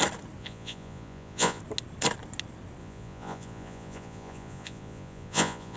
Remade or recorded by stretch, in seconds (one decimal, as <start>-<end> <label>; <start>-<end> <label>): 0.0-0.4 recorded; 0.4-1.6 remade; 1.6-2.8 recorded; 2.8-5.8 remade